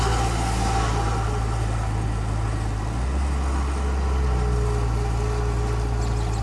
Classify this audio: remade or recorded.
recorded